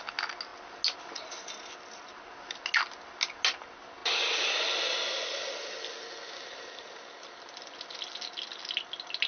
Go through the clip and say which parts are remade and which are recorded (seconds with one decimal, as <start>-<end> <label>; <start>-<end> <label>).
0.0-9.3 recorded